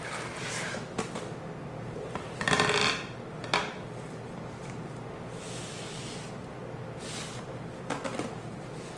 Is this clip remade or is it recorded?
recorded